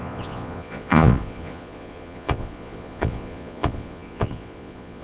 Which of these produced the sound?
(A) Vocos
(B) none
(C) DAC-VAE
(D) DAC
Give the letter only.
A